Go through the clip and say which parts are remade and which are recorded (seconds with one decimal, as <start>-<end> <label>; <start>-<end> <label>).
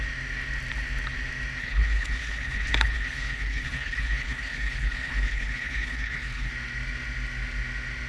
0.0-1.6 recorded; 1.6-6.5 remade; 6.5-8.1 recorded